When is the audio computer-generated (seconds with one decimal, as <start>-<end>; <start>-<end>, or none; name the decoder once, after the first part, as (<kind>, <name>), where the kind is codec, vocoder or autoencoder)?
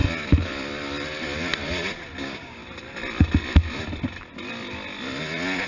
2.2-2.6 (codec, DAC)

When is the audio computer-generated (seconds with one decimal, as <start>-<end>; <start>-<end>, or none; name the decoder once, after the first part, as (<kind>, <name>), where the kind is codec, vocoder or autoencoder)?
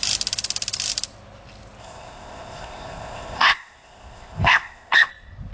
1.8-5.1 (codec, ZipCodec)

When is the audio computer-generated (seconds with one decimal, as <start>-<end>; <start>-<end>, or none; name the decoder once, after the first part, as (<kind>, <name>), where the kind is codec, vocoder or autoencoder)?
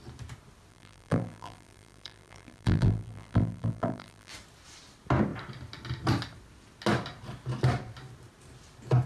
0.7-4.3 (vocoder, BigVGAN v2)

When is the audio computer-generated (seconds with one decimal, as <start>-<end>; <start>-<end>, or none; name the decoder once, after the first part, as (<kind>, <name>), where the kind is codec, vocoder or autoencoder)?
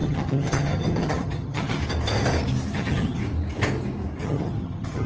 0.0-1.8 (vocoder, HiFi-GAN); 2.7-3.2; 4.2-5.1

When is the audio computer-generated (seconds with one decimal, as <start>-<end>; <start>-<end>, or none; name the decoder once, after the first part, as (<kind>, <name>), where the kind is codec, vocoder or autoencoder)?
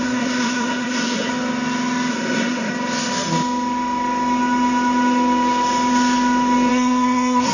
0.0-1.3 (codec, SNAC); 2.1-2.7; 6.7-7.5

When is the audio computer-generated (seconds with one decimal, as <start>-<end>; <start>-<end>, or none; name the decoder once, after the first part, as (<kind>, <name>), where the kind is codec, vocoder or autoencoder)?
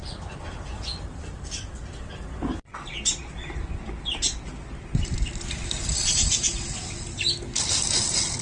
none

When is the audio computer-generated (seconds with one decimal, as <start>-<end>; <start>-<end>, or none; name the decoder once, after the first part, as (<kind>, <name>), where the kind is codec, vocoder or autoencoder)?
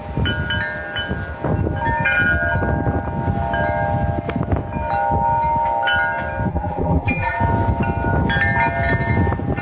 6.5-7.4 (vocoder, BigVGAN v2)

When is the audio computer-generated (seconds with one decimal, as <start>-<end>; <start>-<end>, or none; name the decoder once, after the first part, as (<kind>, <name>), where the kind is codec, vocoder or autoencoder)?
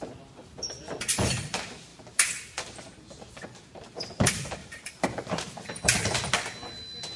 4.6-5.7 (vocoder, BigVGAN v2)